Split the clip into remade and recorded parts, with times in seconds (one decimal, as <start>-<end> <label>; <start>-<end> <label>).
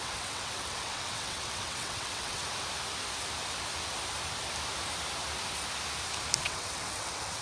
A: 0.0-2.4 remade; 2.4-6.4 recorded; 6.4-7.4 remade